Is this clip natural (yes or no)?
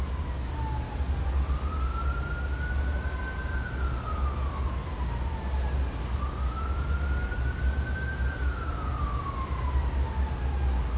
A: yes